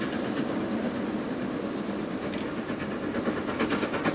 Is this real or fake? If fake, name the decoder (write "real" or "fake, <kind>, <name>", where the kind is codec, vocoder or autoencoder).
real